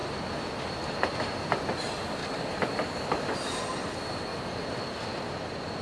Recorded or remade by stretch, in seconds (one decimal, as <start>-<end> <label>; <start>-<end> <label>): 0.0-1.3 remade; 1.3-2.2 recorded; 2.2-3.6 remade; 3.6-5.8 recorded